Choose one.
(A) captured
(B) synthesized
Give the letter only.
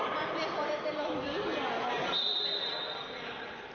A